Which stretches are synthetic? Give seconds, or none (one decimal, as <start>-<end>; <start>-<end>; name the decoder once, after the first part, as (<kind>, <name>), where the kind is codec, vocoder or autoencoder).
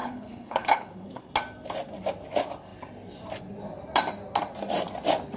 0.0-1.3 (codec, HILCodec)